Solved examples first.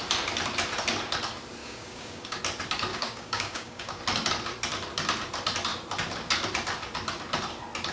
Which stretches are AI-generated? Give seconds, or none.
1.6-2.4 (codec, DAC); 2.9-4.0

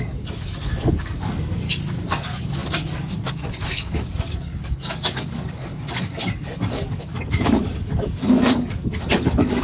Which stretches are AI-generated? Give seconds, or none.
0.0-9.6 (codec, DAC)

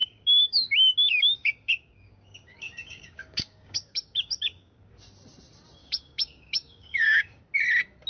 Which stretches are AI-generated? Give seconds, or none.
0.0-4.9 (codec, DAC); 5.8-7.4

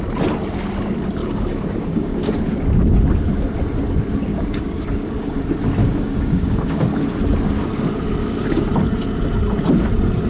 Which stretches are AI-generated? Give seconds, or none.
1.2-2.3 (codec, DAC); 4.3-5.3; 5.8-6.8; 8.2-8.7

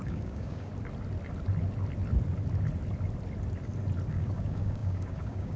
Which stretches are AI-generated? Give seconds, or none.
0.0-0.7 (codec, DAC); 4.1-5.6

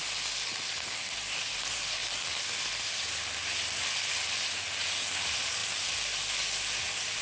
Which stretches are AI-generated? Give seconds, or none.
none